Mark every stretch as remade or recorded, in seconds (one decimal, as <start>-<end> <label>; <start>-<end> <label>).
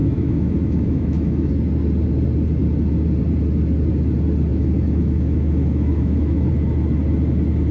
0.0-1.5 remade; 1.5-4.5 recorded; 4.5-6.5 remade; 6.5-7.7 recorded